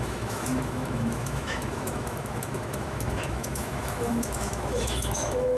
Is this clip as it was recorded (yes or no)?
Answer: no